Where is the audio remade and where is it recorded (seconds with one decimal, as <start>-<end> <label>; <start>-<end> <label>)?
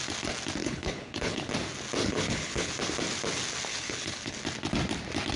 0.0-0.6 recorded; 0.6-1.5 remade; 1.5-2.0 recorded; 2.0-2.7 remade; 2.7-3.7 recorded; 3.7-4.4 remade; 4.4-5.4 recorded